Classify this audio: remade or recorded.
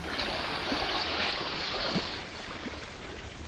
remade